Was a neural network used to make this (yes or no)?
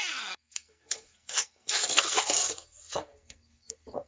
yes